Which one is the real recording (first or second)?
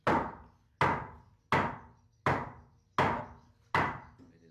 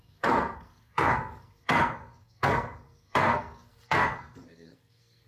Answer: first